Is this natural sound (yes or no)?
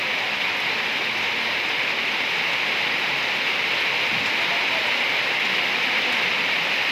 yes